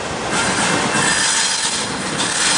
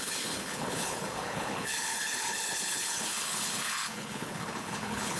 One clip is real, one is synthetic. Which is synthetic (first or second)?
second